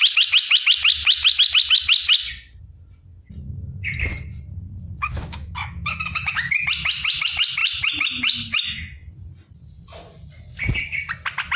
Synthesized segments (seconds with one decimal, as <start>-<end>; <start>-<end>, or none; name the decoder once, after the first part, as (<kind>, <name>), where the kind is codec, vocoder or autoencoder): 4.9-6.4 (autoencoder, DAC-VAE)